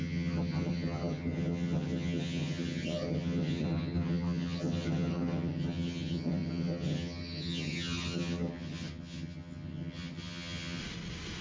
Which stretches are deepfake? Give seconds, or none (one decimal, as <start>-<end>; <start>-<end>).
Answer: 0.0-10.8